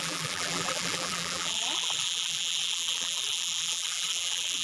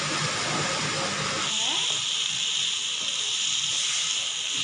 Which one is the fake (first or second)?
first